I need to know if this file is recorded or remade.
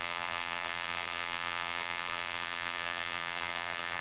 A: remade